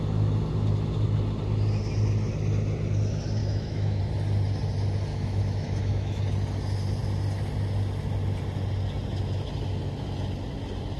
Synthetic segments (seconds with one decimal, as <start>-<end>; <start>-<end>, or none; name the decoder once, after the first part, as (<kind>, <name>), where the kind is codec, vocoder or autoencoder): 3.4-4.0 (autoencoder, DAC-VAE); 5.1-6.2